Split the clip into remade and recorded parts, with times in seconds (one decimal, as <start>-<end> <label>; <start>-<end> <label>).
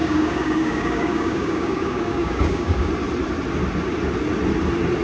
0.0-2.9 remade; 2.9-5.0 recorded